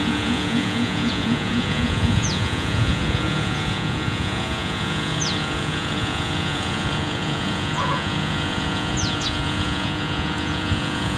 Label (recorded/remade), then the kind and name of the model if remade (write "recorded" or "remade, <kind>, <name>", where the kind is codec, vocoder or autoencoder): remade, vocoder, Vocos